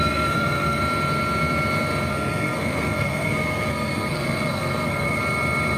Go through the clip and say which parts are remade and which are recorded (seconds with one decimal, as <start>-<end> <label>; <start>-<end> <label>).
0.0-0.8 remade; 0.8-2.1 recorded; 2.1-5.2 remade; 5.2-5.8 recorded